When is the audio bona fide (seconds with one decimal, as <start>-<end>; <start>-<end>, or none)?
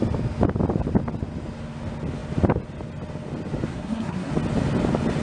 0.0-3.7; 4.3-5.2